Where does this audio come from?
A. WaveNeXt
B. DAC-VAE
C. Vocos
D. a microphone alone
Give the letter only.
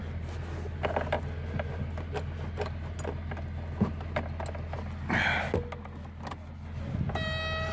D